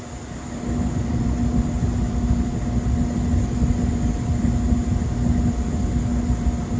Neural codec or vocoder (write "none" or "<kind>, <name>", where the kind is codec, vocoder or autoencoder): none